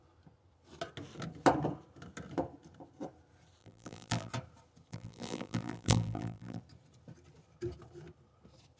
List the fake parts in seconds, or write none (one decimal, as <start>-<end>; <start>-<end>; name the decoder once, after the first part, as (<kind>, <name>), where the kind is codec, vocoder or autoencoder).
3.6-4.3 (vocoder, BigVGAN v2); 4.9-6.6